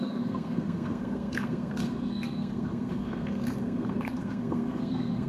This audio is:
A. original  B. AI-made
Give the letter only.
B